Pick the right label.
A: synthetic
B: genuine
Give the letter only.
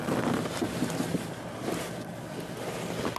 B